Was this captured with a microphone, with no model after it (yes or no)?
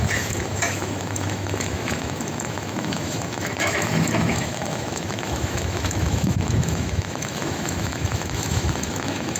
no